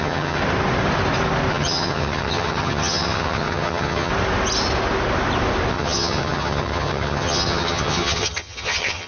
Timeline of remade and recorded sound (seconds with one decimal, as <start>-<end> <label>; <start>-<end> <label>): 0.0-0.4 remade; 0.4-1.5 recorded; 1.5-4.1 remade; 4.1-5.7 recorded; 5.7-9.1 remade